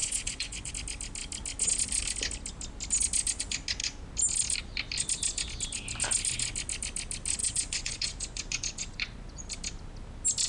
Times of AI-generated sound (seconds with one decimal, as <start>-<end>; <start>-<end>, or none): 0.0-0.7; 7.4-9.4